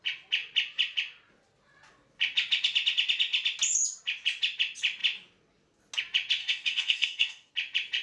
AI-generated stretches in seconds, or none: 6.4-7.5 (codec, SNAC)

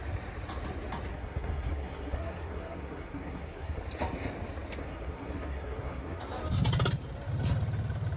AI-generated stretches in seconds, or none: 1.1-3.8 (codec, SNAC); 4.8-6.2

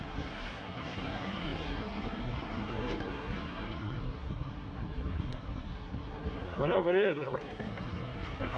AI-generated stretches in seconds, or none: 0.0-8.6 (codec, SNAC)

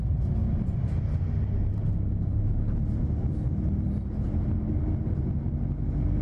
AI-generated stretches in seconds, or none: none